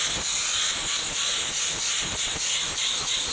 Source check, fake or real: real